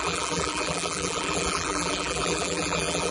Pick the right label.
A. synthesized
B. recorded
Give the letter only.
A